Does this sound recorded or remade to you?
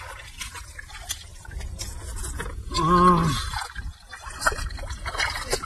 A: recorded